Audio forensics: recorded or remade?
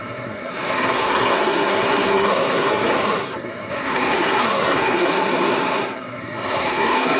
remade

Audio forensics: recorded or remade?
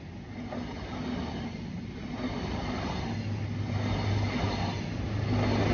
recorded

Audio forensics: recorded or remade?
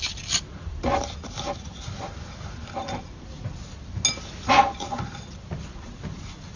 recorded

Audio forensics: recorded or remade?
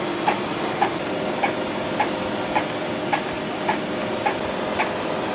recorded